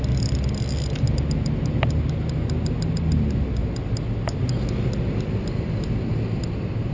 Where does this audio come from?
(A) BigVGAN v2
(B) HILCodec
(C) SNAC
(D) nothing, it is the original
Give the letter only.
D